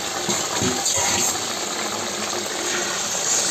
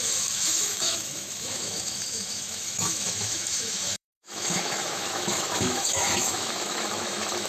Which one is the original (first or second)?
first